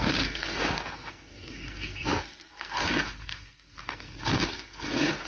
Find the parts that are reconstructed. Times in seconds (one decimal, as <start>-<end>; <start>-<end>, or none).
0.0-5.3